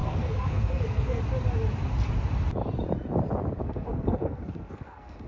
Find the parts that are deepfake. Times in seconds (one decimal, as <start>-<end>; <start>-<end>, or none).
0.0-1.2; 3.6-5.3